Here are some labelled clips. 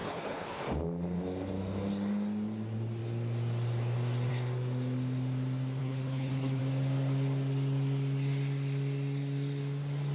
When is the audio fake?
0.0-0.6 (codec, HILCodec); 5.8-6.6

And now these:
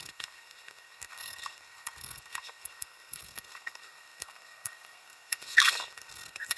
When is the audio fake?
0.0-6.6 (codec, SNAC)

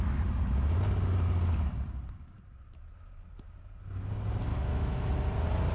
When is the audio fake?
4.5-5.1 (autoencoder, DAC-VAE)

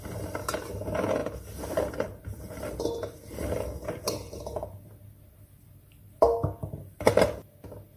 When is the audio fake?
none

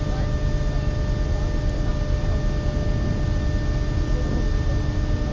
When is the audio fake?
none

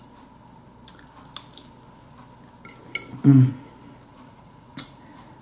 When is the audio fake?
4.1-5.4 (vocoder, Vocos)

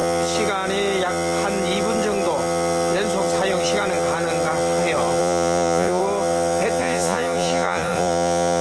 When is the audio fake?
5.2-6.0 (vocoder, Vocos); 6.8-8.6

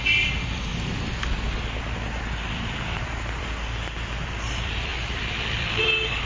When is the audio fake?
0.0-0.7 (vocoder, BigVGAN v2); 2.5-6.3